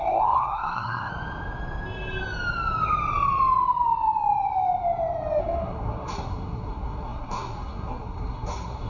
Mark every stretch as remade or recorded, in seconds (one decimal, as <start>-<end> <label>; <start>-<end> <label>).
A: 0.0-1.1 remade; 1.1-5.4 recorded; 5.4-8.9 remade